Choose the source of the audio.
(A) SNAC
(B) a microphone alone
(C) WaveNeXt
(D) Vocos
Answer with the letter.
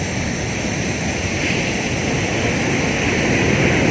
B